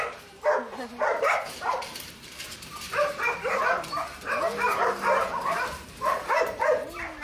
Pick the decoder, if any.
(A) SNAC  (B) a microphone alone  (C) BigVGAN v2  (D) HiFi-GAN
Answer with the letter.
C